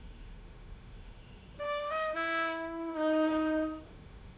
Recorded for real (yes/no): no